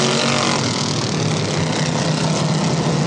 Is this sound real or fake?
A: real